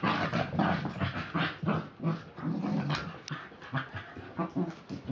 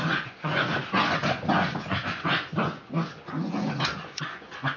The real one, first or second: first